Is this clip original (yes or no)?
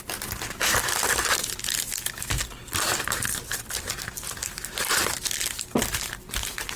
yes